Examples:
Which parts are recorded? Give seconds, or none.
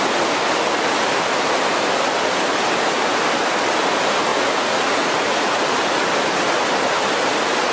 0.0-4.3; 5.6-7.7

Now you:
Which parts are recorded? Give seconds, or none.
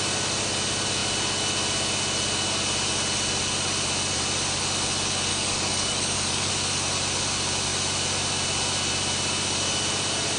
0.0-5.3; 6.5-10.4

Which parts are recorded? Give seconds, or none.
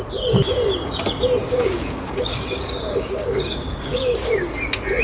0.0-1.4; 4.4-5.0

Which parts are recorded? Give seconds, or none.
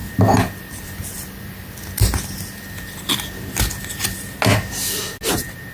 3.4-5.7